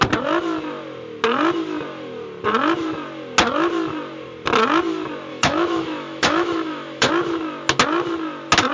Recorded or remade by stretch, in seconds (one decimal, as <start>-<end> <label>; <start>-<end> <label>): 0.0-5.3 recorded; 5.3-7.1 remade; 7.1-8.7 recorded